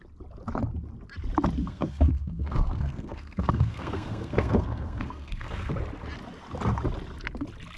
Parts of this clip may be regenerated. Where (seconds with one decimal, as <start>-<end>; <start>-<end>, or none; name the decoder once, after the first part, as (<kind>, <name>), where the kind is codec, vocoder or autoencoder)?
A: 1.6-5.7 (codec, SNAC)